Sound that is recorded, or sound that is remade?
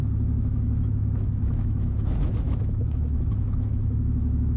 remade